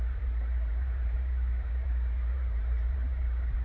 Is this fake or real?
fake